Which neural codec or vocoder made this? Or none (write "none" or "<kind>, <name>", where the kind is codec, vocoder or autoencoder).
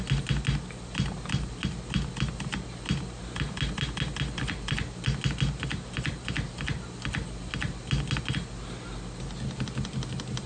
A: none